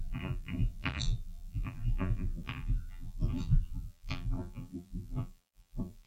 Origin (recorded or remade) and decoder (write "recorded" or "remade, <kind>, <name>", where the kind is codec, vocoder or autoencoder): remade, vocoder, BigVGAN v2